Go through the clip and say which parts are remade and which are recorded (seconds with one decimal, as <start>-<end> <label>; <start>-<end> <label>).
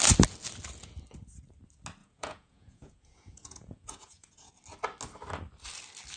0.0-2.0 recorded; 2.0-4.5 remade; 4.5-6.2 recorded